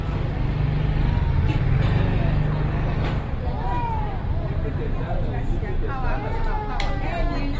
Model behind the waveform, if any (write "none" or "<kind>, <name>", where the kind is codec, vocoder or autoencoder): none